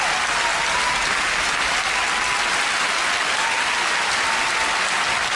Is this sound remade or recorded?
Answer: recorded